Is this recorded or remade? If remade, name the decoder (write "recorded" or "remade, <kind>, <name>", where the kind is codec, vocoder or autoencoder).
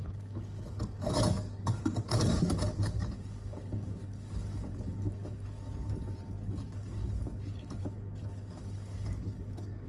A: remade, codec, DAC